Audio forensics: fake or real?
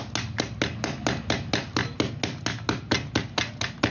real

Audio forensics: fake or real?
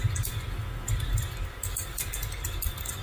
real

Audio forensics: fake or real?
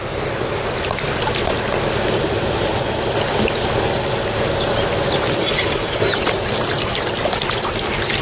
real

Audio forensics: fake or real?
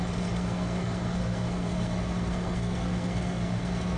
fake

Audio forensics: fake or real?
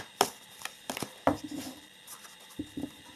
real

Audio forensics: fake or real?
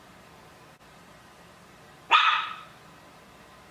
fake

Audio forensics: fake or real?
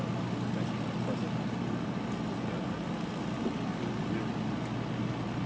real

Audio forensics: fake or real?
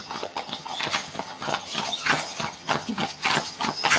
fake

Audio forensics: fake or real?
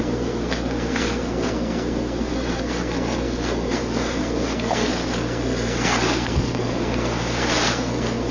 fake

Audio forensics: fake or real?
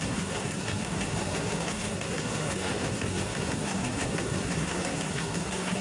fake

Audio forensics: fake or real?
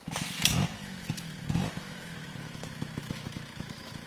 fake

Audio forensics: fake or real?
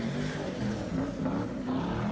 real